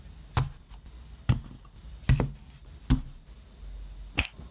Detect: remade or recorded recorded